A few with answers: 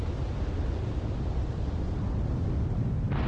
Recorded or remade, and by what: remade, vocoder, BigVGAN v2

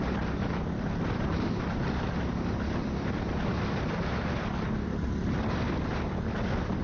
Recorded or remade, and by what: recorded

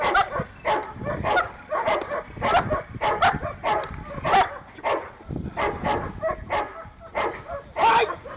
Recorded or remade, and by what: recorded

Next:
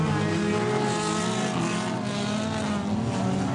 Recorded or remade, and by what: recorded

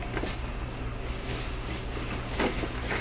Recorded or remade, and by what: recorded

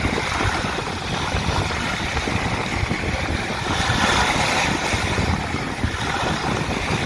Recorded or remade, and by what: recorded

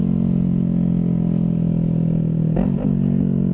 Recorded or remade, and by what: recorded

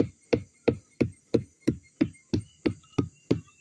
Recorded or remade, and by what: remade, vocoder, BigVGAN v2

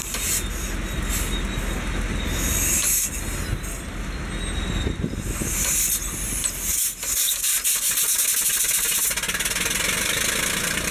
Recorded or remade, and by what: recorded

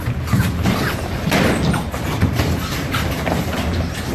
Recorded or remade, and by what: recorded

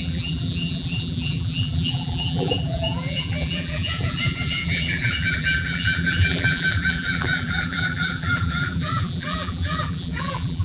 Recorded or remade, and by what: remade, vocoder, BigVGAN v2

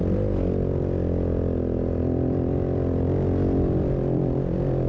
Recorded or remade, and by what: remade, vocoder, BigVGAN v2